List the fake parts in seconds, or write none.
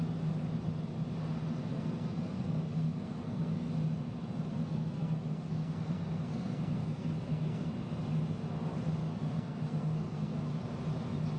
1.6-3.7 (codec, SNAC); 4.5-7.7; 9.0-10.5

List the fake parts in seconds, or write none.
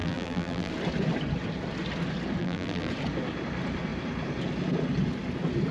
0.0-0.7 (vocoder, BigVGAN v2); 2.4-2.9